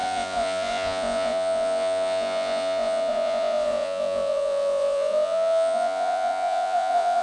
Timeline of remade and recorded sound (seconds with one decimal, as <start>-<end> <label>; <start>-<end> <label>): 0.0-7.2 remade